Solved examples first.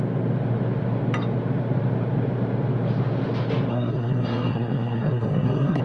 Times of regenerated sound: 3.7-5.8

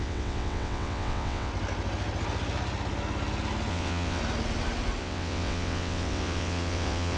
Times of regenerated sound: 0.0-1.5; 3.7-4.2; 5.0-7.2